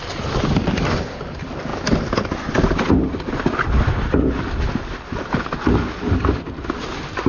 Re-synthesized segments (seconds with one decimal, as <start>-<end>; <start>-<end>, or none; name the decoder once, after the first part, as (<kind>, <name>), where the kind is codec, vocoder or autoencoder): none